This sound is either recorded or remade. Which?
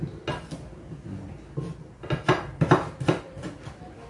recorded